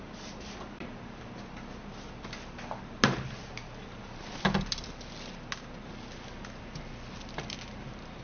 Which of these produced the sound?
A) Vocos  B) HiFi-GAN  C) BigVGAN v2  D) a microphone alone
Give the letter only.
D